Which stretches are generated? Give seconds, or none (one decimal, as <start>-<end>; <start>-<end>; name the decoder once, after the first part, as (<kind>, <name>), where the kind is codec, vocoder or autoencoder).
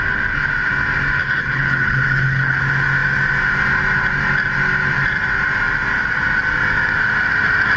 1.2-2.6 (codec, HILCodec)